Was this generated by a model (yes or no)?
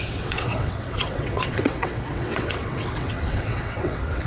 yes